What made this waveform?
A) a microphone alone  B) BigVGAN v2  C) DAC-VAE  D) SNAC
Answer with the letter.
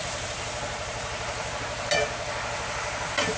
A